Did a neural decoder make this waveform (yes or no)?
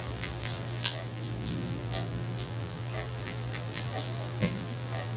yes